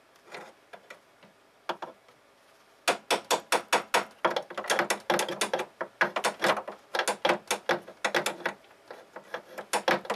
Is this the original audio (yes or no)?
yes